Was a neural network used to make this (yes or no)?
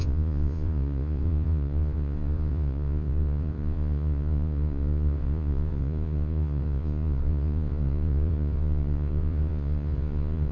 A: yes